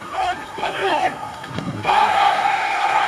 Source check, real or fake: fake